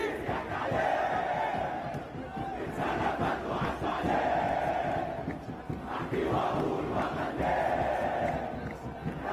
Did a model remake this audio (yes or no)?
no